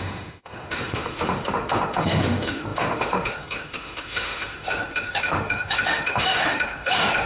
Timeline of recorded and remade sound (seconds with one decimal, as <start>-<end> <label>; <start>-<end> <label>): 0.0-7.3 remade